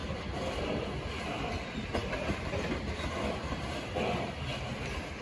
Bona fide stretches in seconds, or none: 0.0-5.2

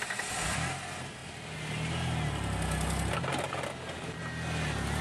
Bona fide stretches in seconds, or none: 0.0-5.0

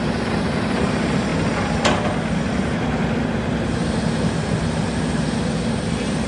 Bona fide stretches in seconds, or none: 1.3-2.5

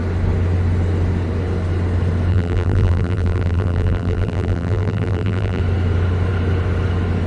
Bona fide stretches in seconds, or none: 0.0-2.3; 5.6-7.3

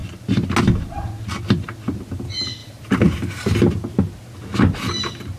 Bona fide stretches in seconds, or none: 0.0-2.6; 3.7-5.4